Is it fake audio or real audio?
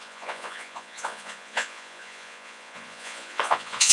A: fake